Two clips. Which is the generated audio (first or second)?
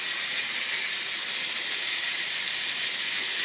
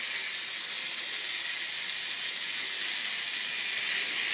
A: first